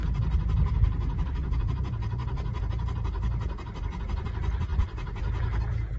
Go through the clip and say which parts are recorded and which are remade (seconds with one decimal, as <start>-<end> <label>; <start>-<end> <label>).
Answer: 0.0-1.4 recorded; 1.4-2.6 remade; 2.6-6.0 recorded